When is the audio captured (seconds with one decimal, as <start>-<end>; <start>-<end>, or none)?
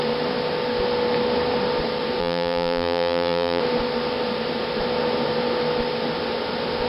0.0-2.2; 3.6-6.9